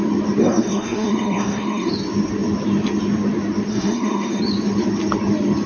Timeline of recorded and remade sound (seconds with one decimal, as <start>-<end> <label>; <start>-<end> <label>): 0.0-0.4 recorded; 0.4-1.9 remade; 1.9-3.7 recorded; 3.7-4.4 remade; 4.4-5.7 recorded